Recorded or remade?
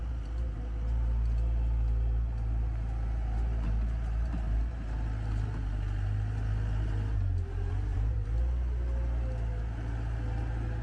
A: recorded